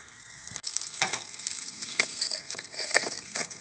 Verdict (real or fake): fake